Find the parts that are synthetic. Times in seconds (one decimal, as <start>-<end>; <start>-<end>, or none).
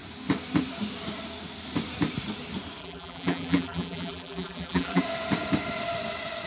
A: 2.8-5.0